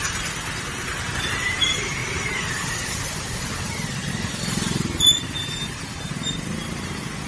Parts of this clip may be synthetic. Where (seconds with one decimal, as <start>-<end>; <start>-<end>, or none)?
none